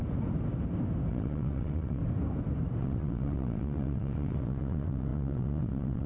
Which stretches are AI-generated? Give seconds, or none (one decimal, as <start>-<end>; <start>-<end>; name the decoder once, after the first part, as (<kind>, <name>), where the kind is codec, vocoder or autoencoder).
1.1-2.0 (vocoder, WaveNeXt); 2.8-6.1